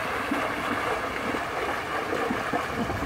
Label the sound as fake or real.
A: real